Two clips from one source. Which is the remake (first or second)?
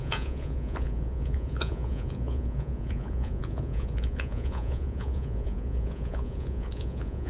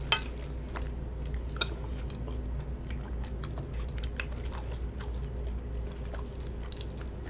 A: first